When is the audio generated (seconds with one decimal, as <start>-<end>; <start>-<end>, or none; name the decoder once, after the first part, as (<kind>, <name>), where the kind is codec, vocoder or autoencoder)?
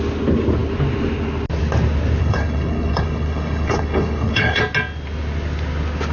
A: 2.2-4.6 (codec, HILCodec)